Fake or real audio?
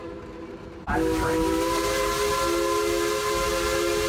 real